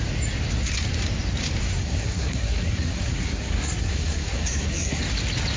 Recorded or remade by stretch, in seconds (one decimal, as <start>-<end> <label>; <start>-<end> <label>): 0.0-1.6 recorded; 1.6-5.0 remade; 5.0-5.6 recorded